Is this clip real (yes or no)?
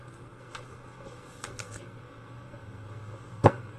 no